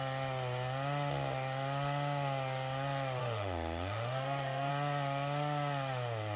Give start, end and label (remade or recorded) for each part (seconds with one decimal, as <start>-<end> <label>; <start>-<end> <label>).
0.0-3.2 recorded; 3.2-4.7 remade; 4.7-6.4 recorded